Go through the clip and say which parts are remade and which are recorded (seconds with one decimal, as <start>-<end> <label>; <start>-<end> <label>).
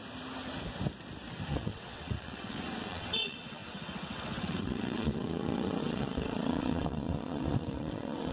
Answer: 0.0-1.5 recorded; 1.5-8.3 remade